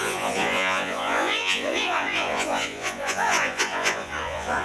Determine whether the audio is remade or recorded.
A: remade